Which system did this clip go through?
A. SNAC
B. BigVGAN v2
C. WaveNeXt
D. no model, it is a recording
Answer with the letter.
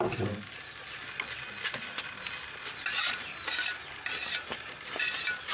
D